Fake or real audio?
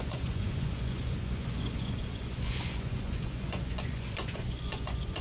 fake